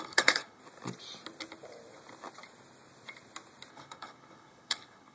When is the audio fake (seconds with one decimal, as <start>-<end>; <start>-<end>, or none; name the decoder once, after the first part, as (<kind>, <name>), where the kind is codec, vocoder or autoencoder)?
0.0-0.6 (codec, HILCodec); 3.7-5.1